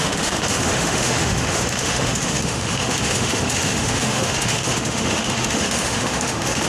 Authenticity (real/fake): fake